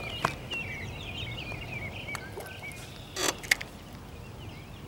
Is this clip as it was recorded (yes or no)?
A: yes